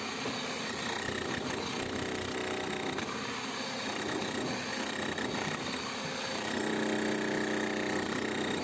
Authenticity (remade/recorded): recorded